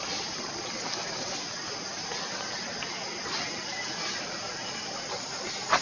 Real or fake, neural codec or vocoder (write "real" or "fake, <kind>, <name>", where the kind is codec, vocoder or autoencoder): real